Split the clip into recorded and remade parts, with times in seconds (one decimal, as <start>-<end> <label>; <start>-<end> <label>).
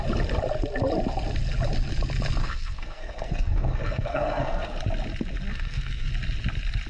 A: 0.0-2.4 recorded; 2.4-4.8 remade; 4.8-5.5 recorded; 5.5-6.1 remade; 6.1-6.9 recorded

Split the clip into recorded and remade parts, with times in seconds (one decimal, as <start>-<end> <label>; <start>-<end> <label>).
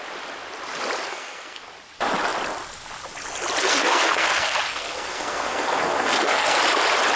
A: 0.0-1.1 recorded; 1.1-1.7 remade; 1.7-3.6 recorded; 3.6-6.6 remade; 6.6-7.2 recorded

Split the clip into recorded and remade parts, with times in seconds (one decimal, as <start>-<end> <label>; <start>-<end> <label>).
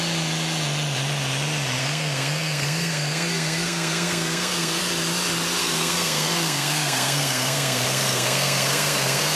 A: 0.0-1.8 recorded; 1.8-4.8 remade; 4.8-5.6 recorded; 5.6-9.4 remade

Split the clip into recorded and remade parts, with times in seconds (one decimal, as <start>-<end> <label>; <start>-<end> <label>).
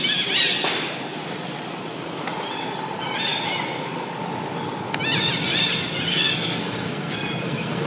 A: 0.0-6.1 recorded; 6.1-7.9 remade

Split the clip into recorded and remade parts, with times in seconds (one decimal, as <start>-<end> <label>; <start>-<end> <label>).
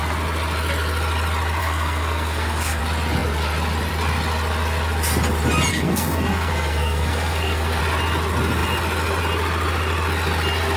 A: 0.0-1.6 recorded; 1.6-2.8 remade; 2.8-5.7 recorded; 5.7-7.8 remade; 7.8-10.8 recorded